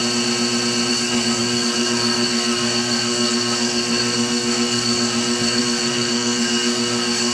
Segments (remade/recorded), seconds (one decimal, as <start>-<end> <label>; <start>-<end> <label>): 0.0-0.9 recorded; 0.9-7.3 remade